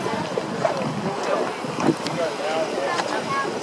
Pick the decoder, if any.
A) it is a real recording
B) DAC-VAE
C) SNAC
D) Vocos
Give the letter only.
A